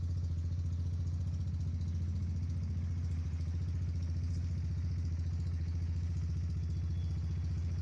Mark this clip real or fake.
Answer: real